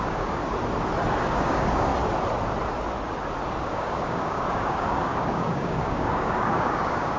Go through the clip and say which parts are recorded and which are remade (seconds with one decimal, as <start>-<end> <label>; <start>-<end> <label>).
0.0-0.4 remade; 0.4-1.3 recorded; 1.3-1.9 remade; 1.9-3.6 recorded; 3.6-7.2 remade